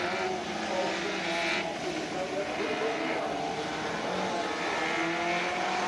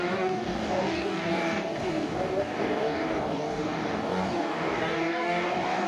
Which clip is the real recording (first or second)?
first